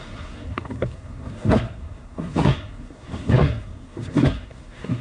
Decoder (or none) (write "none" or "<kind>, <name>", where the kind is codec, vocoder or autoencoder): codec, SNAC